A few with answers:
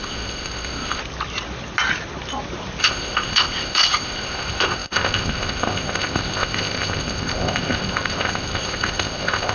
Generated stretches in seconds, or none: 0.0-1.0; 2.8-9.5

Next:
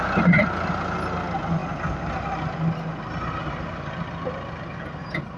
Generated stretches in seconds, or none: none

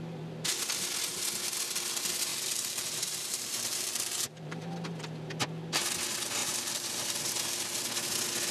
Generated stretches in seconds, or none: 2.3-4.7; 6.4-7.2

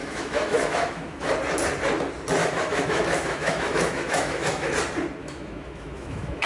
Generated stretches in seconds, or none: 0.0-1.3; 2.4-4.7; 5.2-6.5

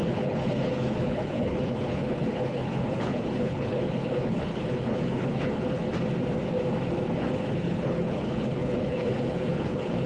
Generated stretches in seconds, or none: 0.0-5.8; 7.1-10.1

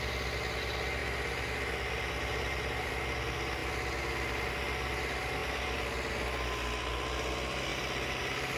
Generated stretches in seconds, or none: none

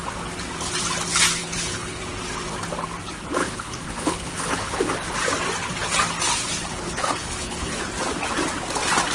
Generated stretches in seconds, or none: 1.4-2.0; 3.4-4.8; 6.7-7.8